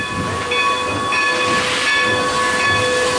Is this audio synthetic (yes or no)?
no